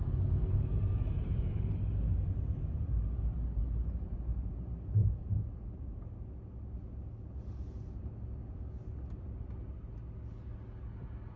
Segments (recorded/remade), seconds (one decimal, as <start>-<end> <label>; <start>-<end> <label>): 0.0-11.4 recorded